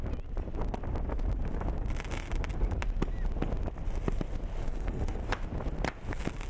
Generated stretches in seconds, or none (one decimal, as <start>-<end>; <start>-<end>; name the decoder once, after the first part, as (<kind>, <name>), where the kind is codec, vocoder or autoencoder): 4.6-5.2 (codec, SNAC)